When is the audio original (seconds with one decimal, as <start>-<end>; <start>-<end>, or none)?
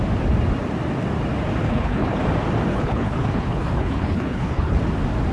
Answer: 0.0-1.6; 2.2-2.7; 4.8-5.3